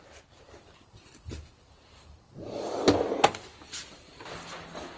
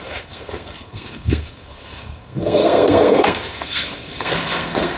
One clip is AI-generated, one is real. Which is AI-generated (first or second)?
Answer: second